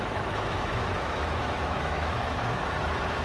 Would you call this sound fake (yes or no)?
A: yes